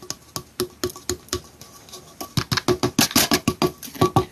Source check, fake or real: real